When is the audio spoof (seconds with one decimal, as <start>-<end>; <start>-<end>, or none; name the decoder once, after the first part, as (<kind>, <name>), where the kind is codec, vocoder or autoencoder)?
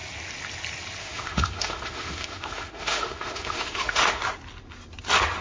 1.0-4.2 (autoencoder, DAC-VAE)